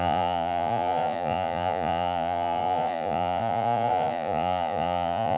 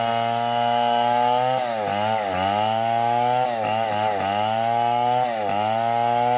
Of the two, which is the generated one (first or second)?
first